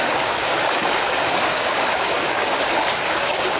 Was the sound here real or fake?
fake